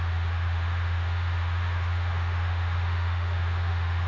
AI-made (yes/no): yes